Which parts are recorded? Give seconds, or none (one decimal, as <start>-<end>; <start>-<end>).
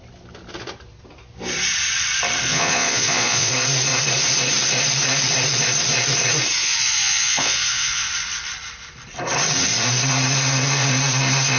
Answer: 0.0-2.5; 3.5-6.6; 8.1-11.6